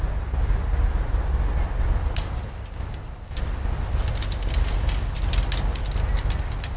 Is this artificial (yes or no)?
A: no